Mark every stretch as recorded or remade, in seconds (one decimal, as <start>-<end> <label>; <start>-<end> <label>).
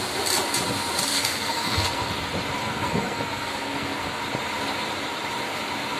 0.0-1.1 recorded; 1.1-2.1 remade; 2.1-2.6 recorded; 2.6-4.2 remade; 4.2-6.0 recorded